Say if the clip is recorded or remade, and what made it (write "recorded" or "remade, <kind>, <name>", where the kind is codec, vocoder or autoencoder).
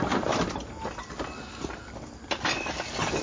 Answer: recorded